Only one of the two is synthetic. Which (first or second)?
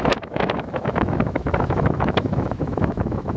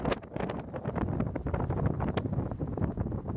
first